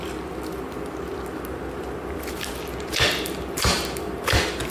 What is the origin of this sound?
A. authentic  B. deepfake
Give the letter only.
A